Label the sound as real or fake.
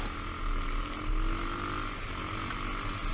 real